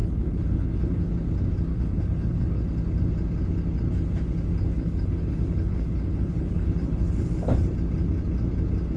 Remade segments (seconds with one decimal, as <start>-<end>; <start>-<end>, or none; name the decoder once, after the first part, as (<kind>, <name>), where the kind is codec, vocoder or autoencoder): 0.0-1.1 (codec, HILCodec); 1.7-2.6; 4.6-7.3